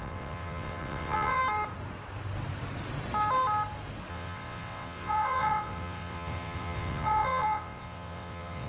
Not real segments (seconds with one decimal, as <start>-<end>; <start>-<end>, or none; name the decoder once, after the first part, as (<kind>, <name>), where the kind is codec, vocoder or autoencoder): 0.0-1.4 (vocoder, WaveNeXt); 4.1-8.7